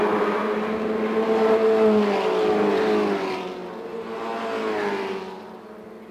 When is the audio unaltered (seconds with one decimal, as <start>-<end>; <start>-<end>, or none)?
0.0-6.1